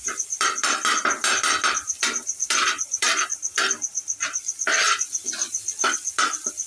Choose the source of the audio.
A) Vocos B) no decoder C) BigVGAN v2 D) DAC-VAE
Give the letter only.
C